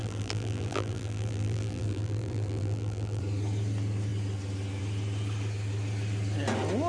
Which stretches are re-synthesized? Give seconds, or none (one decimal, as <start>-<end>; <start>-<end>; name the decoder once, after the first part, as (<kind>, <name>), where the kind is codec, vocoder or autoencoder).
0.0-3.2 (vocoder, BigVGAN v2)